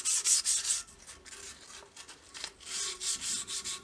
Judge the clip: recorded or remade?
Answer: recorded